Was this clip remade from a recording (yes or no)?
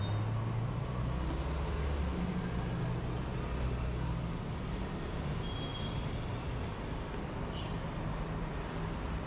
no